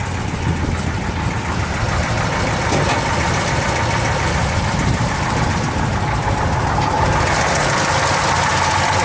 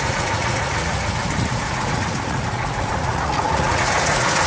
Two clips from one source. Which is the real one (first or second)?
first